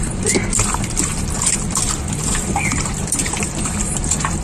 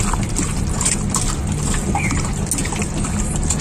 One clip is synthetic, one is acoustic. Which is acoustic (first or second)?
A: second